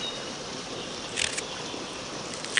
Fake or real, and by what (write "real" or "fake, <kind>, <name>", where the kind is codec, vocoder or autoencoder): real